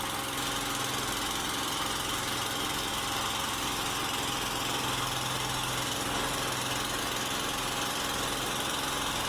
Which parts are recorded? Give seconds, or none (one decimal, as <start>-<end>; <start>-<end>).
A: 0.0-9.3

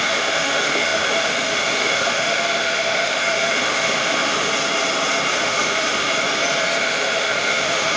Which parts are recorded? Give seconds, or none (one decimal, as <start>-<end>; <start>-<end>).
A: 4.5-5.3; 6.1-6.8

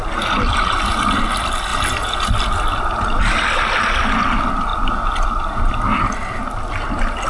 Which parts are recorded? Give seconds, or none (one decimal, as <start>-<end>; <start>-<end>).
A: 0.0-7.3

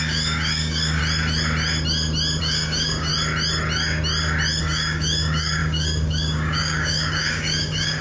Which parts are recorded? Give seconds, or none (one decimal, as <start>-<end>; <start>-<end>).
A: 1.0-2.4; 3.1-4.6

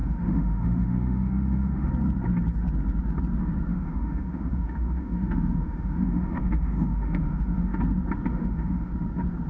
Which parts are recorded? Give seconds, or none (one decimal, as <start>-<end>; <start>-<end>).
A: 1.9-3.7; 7.8-8.3; 8.9-9.5

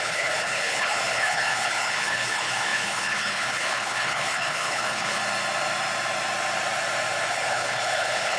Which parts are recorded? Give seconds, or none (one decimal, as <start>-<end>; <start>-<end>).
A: 5.2-7.3

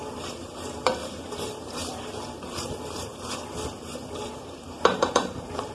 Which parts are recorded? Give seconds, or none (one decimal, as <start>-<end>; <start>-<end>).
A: none